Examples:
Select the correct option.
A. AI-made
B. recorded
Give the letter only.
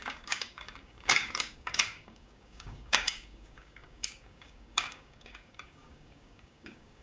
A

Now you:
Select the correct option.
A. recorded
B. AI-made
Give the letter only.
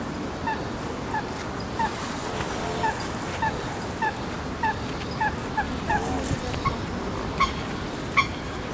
A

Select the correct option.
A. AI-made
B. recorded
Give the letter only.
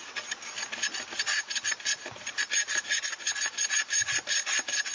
B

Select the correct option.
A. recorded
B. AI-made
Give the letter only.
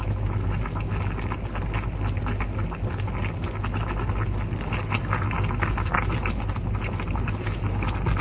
A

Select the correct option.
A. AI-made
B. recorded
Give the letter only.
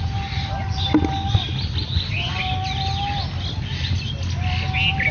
B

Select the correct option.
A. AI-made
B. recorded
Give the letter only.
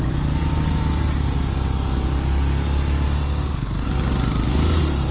B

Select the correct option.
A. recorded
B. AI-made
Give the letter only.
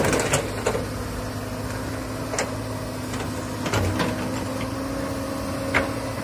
A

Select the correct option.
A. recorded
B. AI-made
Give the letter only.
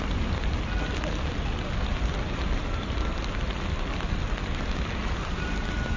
A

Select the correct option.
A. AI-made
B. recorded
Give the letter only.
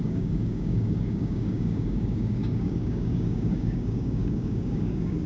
A